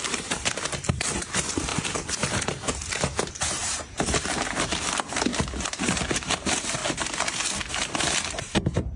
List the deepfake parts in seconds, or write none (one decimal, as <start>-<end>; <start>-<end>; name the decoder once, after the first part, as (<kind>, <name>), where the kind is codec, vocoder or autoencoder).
0.0-5.3 (vocoder, BigVGAN v2); 5.8-6.8; 8.3-9.0